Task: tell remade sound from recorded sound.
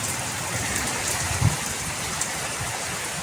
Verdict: remade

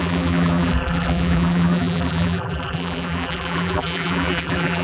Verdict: remade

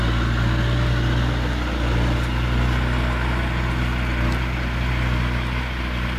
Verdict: recorded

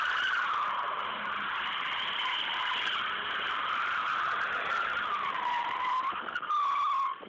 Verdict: remade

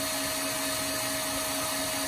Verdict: recorded